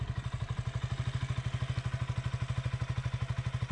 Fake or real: real